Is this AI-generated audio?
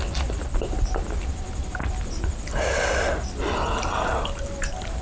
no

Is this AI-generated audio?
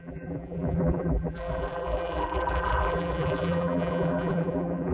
yes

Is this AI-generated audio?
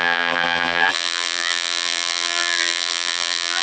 yes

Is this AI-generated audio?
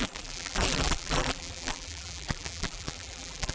yes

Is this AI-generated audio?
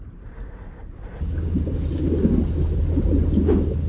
no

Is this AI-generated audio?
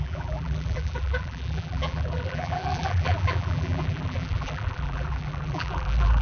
yes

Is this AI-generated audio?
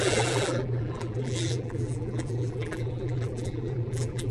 yes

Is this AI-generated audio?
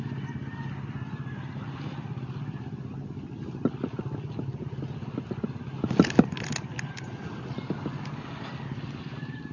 no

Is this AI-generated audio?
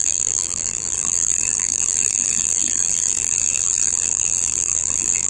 yes